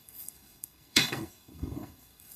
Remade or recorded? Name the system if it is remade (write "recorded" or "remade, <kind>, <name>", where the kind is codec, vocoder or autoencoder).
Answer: remade, codec, SNAC